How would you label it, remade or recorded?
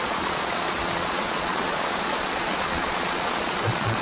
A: remade